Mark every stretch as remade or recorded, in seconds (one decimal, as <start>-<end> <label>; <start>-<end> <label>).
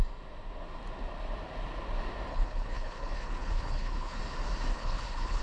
0.0-2.3 recorded; 2.3-4.2 remade; 4.2-4.7 recorded; 4.7-5.4 remade